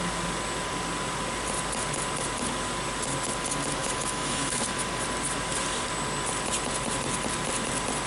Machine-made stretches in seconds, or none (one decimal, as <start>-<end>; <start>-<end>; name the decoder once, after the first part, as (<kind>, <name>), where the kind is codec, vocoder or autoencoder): 3.8-4.6 (autoencoder, DAC-VAE)